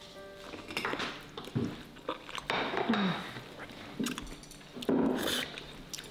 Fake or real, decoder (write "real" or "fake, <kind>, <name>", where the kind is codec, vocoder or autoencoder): real